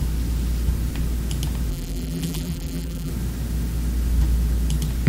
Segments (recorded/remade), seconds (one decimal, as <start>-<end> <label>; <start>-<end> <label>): 0.0-1.7 recorded; 1.7-3.1 remade; 3.1-5.1 recorded